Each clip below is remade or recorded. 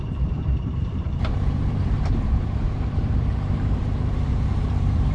remade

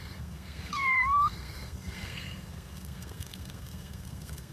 remade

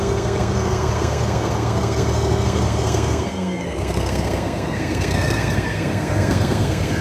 remade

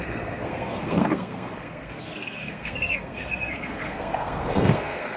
remade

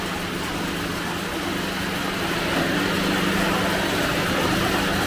recorded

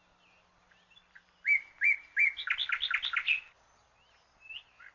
recorded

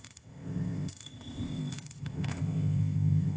remade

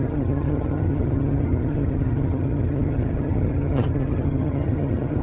remade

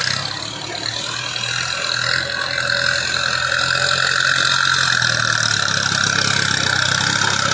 recorded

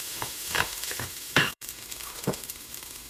remade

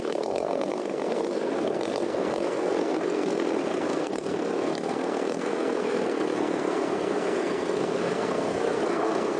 remade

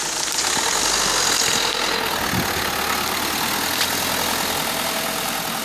recorded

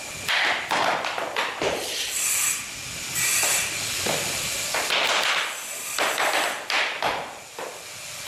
recorded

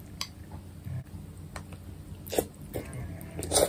recorded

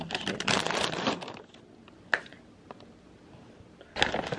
recorded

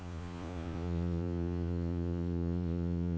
remade